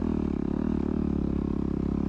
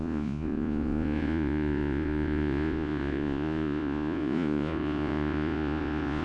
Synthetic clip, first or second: second